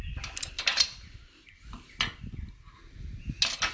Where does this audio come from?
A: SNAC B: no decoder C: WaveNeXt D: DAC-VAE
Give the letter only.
B